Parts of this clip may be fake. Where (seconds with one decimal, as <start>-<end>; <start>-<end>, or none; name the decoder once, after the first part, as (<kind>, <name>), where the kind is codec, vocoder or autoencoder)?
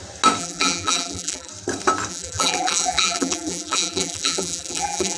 0.4-1.5 (vocoder, BigVGAN v2); 2.1-5.2